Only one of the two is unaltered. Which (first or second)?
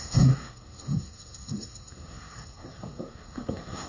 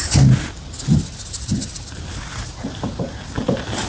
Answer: second